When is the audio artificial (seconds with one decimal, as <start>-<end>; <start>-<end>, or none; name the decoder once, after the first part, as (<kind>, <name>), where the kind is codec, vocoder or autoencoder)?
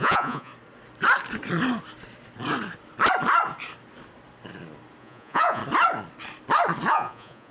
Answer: 0.0-0.5 (vocoder, Vocos); 5.0-5.6; 6.9-7.5